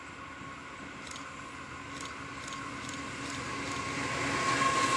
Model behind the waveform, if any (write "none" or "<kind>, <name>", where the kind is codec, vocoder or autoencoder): none